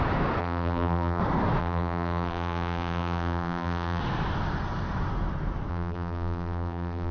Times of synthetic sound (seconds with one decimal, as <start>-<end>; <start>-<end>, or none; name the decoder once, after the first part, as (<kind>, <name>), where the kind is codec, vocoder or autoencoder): 0.4-1.2 (vocoder, BigVGAN v2); 1.6-4.0; 5.7-7.1